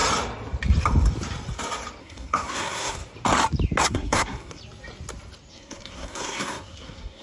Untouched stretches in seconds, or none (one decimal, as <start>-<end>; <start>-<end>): 0.0-2.0; 3.0-3.8; 4.6-5.5